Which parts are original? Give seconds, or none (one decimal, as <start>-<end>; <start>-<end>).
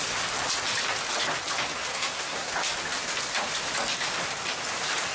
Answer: 0.0-1.9; 2.5-5.1